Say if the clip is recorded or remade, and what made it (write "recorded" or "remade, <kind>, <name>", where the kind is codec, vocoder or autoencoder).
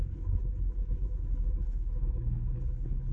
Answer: remade, codec, HILCodec